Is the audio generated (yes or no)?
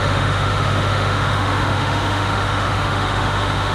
yes